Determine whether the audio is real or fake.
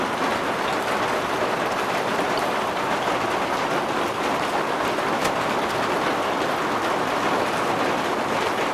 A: real